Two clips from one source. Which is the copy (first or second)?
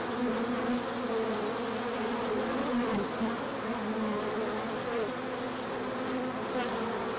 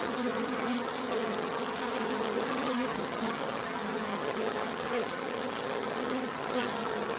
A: second